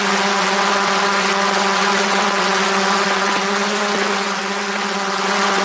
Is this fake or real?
fake